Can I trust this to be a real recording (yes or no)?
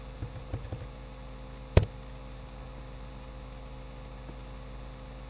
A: yes